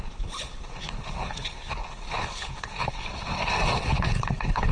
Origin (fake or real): fake